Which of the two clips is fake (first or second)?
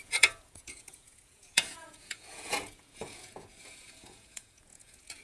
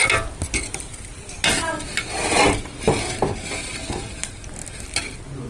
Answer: first